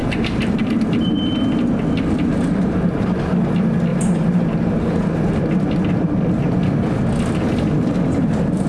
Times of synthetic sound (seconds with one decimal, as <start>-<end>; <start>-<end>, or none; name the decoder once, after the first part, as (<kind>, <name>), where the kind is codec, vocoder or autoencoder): 0.0-1.2 (vocoder, BigVGAN v2); 2.3-3.1; 3.9-5.4